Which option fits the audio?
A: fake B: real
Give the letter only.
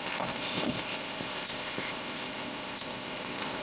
A